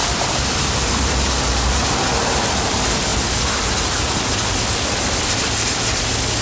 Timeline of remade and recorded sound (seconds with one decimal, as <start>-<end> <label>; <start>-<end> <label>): 0.0-6.4 recorded